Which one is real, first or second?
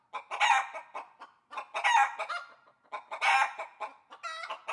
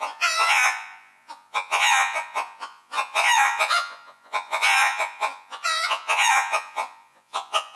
first